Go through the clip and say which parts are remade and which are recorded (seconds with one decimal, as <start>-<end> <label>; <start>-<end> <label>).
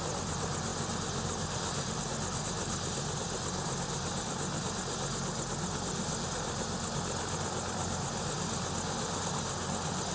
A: 0.0-10.1 recorded